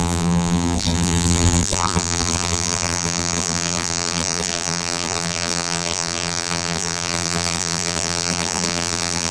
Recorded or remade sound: remade